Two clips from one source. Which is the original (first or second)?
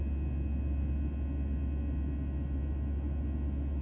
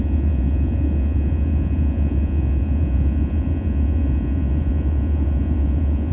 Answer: first